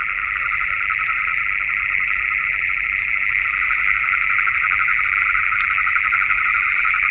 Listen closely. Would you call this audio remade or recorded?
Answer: remade